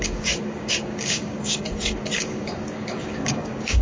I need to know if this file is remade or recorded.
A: remade